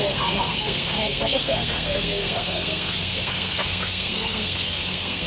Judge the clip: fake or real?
fake